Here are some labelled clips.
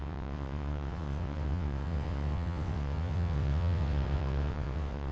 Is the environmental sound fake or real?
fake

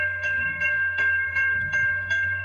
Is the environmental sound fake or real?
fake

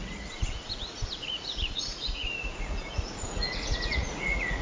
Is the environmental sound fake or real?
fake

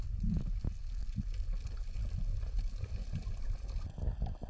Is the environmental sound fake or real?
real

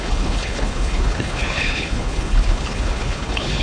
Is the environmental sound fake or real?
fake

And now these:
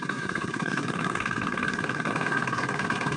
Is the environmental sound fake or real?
fake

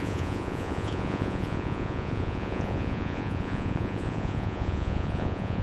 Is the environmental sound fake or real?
fake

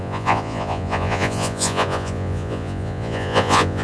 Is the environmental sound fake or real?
fake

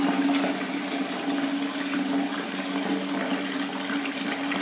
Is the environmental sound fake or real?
real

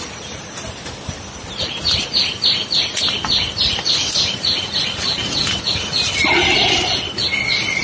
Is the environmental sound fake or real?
real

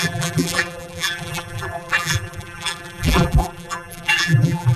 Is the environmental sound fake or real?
fake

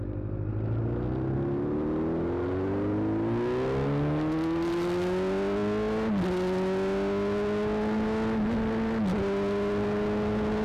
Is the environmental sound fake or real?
real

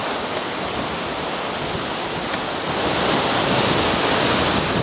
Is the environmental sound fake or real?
real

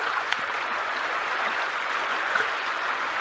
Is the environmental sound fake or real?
fake